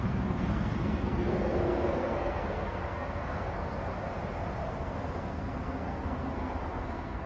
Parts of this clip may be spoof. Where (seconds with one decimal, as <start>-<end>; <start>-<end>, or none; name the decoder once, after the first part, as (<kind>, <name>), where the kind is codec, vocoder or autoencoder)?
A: 0.0-3.9 (codec, SNAC); 4.7-7.3